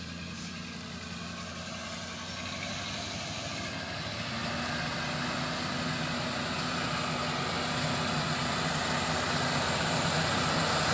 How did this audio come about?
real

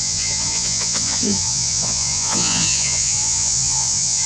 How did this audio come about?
fake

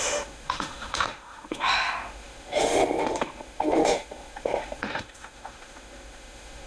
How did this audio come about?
fake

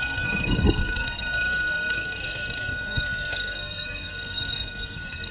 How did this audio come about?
fake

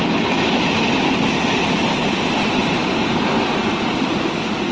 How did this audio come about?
real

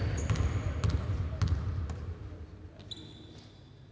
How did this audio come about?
real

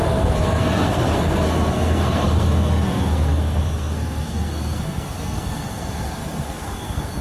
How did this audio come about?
fake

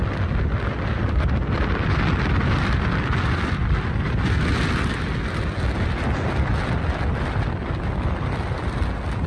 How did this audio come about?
real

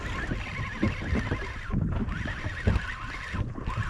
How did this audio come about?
real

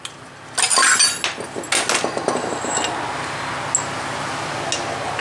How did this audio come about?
real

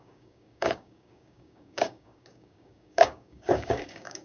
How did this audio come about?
fake